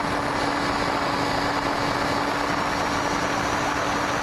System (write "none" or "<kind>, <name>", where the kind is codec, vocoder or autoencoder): none